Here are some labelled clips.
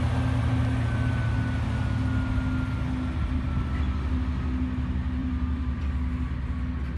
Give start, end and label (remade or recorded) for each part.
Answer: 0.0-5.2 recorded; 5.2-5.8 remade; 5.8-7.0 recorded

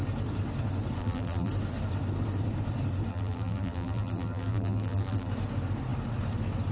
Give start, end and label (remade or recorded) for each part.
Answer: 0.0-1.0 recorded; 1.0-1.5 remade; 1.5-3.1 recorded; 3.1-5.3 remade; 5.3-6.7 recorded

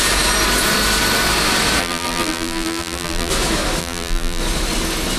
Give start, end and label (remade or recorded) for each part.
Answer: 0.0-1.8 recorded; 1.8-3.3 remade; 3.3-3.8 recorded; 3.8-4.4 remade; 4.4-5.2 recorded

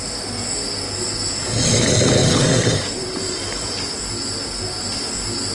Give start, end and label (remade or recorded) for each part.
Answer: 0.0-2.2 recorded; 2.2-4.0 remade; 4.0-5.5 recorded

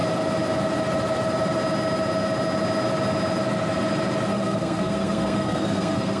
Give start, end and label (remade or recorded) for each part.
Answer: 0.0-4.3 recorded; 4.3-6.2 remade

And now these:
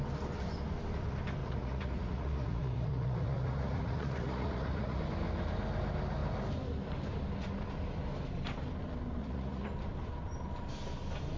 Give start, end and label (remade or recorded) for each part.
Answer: 0.0-1.4 recorded; 1.4-5.0 remade; 5.0-9.2 recorded; 9.2-9.7 remade; 9.7-11.4 recorded

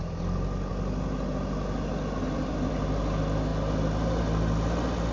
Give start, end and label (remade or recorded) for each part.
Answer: 0.0-5.1 recorded